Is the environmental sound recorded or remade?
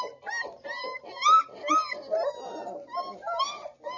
recorded